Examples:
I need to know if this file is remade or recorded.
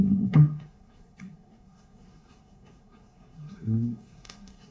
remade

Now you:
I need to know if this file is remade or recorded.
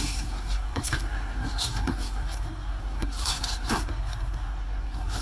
remade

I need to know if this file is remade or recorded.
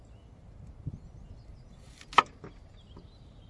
recorded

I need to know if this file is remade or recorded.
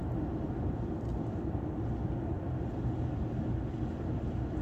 recorded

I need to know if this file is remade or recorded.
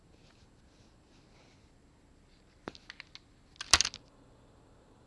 recorded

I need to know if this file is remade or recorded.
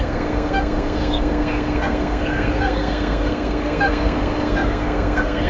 remade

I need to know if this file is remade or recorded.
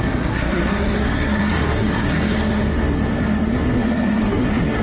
remade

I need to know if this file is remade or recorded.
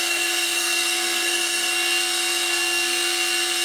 remade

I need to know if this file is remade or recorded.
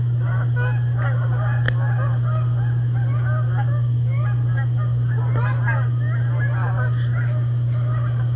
recorded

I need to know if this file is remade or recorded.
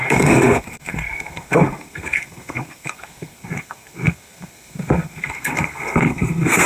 remade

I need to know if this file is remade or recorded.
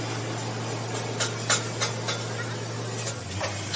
recorded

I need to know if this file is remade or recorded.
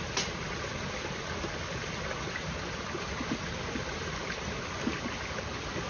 recorded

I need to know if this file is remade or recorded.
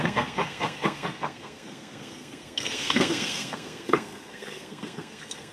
remade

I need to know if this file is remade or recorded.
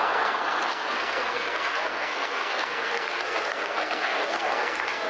remade